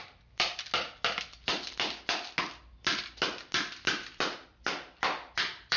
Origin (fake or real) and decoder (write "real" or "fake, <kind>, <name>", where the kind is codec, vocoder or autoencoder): real